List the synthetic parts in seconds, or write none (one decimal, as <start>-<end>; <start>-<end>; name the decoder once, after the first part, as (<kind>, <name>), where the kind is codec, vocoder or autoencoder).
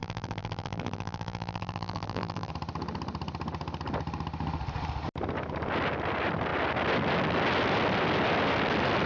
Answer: 0.0-2.5 (vocoder, BigVGAN v2)